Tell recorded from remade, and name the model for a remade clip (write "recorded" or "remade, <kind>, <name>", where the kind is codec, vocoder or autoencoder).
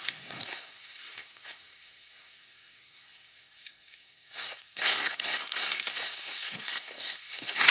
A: remade, codec, SNAC